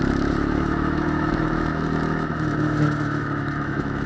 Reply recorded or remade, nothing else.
remade